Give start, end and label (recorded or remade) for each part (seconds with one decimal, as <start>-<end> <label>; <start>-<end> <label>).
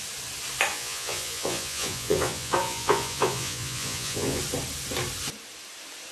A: 0.0-0.7 recorded; 0.7-4.4 remade; 4.4-6.1 recorded